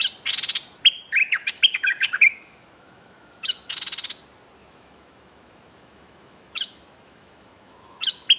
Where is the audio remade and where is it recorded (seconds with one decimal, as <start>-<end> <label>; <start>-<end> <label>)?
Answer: 0.0-1.2 recorded; 1.2-3.7 remade; 3.7-4.6 recorded; 4.6-8.4 remade